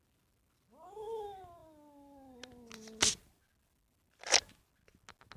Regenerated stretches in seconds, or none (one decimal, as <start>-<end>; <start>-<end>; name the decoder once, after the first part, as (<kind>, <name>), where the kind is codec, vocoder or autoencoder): none